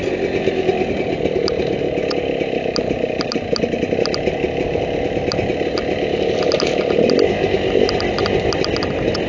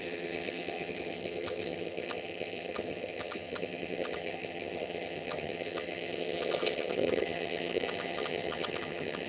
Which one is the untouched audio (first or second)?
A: first